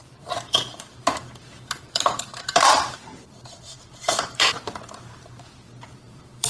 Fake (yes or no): yes